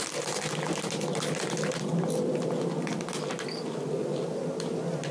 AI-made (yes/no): no